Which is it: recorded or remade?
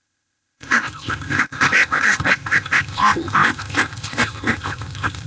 remade